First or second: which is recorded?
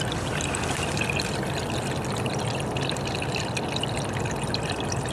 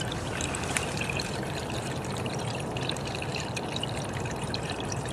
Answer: first